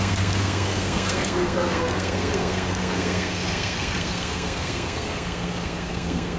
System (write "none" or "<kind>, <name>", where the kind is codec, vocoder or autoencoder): codec, SNAC